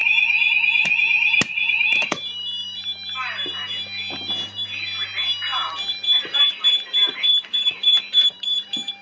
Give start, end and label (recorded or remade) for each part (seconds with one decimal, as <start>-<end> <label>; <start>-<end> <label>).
0.0-3.6 remade; 3.6-5.9 recorded; 5.9-9.0 remade